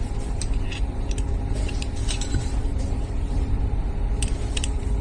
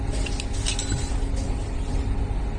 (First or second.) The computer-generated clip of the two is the first